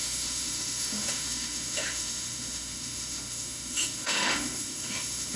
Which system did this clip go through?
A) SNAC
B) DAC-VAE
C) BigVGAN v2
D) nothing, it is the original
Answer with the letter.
B